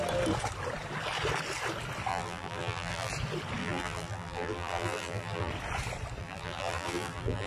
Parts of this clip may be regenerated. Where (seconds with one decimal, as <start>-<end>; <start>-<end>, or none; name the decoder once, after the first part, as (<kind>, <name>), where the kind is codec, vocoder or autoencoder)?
2.1-3.1 (vocoder, BigVGAN v2); 3.6-5.5; 6.2-7.5